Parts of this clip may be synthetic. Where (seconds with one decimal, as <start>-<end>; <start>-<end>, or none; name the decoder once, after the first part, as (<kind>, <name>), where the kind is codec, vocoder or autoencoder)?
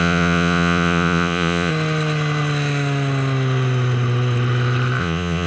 0.0-1.7 (vocoder, Vocos); 5.0-5.5